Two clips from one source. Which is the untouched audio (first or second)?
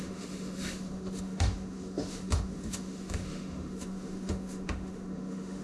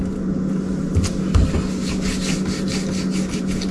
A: second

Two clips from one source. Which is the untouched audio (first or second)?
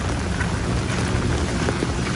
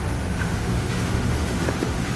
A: first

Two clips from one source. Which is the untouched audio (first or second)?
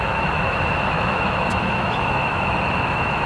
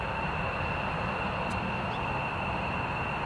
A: second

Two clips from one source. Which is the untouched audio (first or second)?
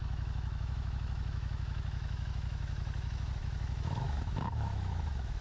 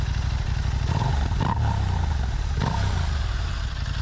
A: second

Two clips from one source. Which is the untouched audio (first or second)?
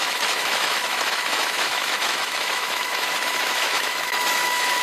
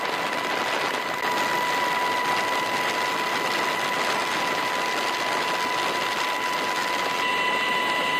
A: second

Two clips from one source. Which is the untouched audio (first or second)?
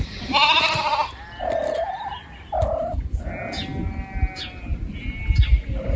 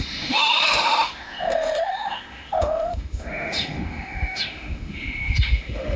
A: first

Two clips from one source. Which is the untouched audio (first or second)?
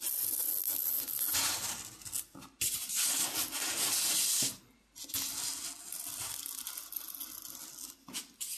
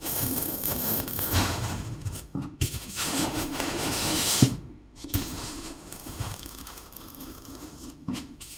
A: first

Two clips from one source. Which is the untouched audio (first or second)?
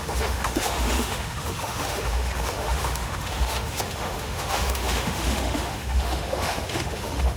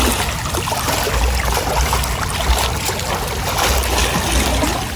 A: second